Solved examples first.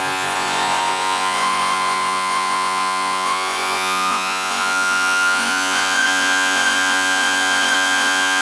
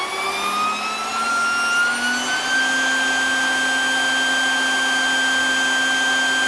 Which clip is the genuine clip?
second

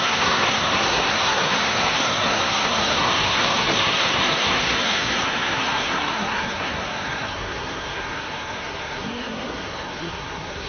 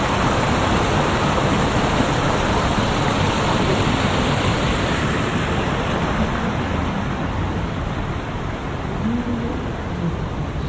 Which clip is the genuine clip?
second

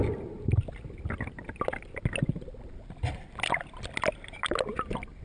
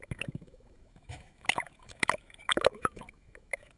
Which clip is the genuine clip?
first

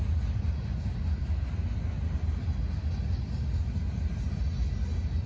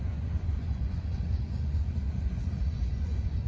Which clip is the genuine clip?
first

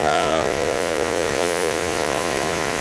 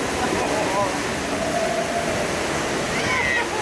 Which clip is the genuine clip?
second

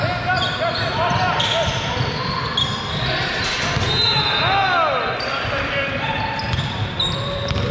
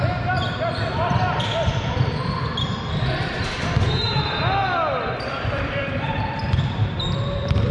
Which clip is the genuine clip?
first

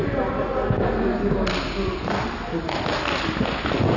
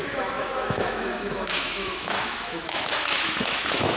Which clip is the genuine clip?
first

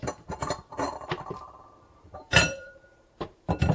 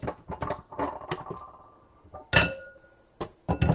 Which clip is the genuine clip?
second